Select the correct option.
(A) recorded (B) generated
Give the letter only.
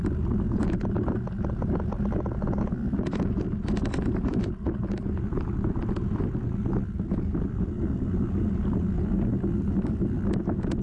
A